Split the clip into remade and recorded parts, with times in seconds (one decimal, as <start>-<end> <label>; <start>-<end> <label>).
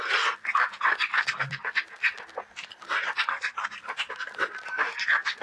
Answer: 0.0-5.4 recorded